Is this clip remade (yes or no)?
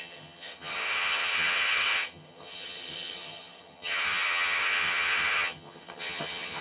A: yes